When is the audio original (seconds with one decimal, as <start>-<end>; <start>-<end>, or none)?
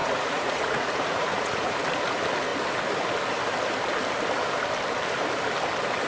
1.8-6.1